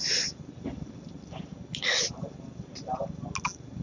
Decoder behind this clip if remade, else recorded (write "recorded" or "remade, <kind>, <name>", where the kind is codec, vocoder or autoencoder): recorded